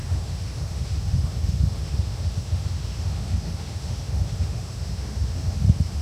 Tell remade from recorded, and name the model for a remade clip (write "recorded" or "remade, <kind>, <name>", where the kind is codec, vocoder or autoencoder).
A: remade, autoencoder, DAC-VAE